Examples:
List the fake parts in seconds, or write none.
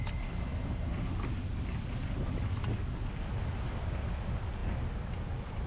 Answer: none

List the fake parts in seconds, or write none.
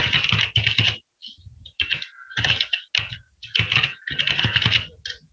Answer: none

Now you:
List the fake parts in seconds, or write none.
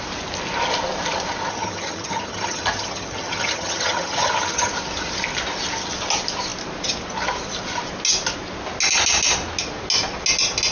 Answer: 1.5-4.7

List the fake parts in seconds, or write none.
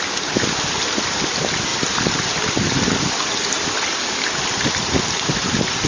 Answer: none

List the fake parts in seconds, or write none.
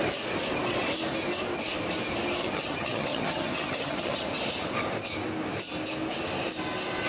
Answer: 2.4-4.3